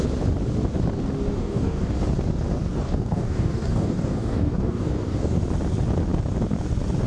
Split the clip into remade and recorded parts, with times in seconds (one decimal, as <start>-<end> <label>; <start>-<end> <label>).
0.0-1.4 recorded; 1.4-2.0 remade; 2.0-2.8 recorded; 2.8-5.4 remade; 5.4-7.1 recorded